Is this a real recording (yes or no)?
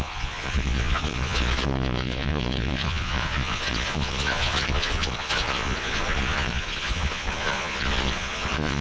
no